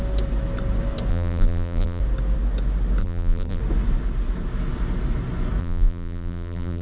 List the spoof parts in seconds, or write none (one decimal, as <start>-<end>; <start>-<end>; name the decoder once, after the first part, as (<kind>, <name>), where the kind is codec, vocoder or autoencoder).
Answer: 1.1-2.0 (vocoder, BigVGAN v2); 3.0-3.6; 5.6-6.8